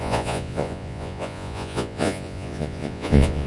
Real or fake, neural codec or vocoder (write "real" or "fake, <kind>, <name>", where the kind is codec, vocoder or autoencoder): fake, vocoder, Vocos